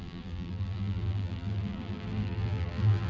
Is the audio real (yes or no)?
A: no